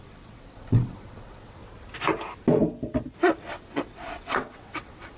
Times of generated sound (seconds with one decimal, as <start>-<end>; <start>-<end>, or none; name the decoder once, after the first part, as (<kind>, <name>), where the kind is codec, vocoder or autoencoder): 0.0-1.6 (vocoder, WaveNeXt); 3.5-5.2

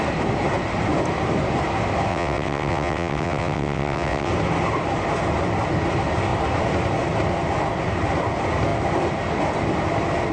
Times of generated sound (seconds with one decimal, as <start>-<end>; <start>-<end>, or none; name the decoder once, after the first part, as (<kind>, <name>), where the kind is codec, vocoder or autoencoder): 2.1-4.3 (vocoder, WaveNeXt)

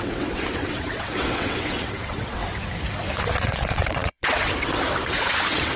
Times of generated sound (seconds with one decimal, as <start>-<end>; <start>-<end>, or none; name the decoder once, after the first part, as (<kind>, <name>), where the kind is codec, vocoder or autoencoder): 0.0-2.4 (vocoder, WaveNeXt); 3.3-5.8

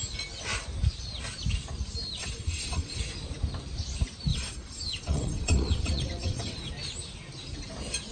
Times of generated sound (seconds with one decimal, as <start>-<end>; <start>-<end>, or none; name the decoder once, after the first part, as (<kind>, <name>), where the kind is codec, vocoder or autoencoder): 2.2-3.0 (vocoder, WaveNeXt); 4.3-6.7